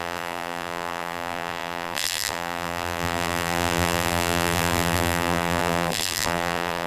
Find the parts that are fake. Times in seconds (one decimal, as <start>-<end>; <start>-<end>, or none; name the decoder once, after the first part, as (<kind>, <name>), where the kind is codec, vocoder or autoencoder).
0.0-6.9 (vocoder, BigVGAN v2)